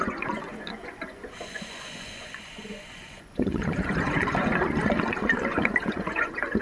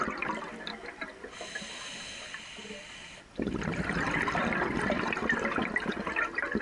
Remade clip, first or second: first